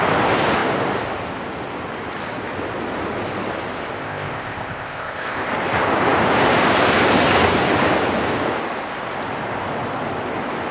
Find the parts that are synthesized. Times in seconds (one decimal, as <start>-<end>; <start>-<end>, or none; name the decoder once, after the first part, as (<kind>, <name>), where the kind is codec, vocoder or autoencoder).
4.0-5.5 (codec, ZipCodec)